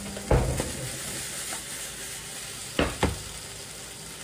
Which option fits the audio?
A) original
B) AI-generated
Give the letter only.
A